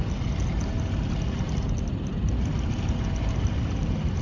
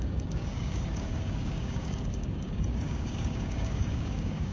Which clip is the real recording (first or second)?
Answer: first